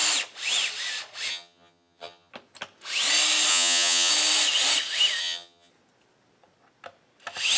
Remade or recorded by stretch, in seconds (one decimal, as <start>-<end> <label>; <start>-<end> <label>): 0.0-1.3 recorded; 1.3-2.3 remade; 2.3-3.5 recorded; 3.5-4.1 remade; 4.1-5.2 recorded; 5.2-5.7 remade; 5.7-7.6 recorded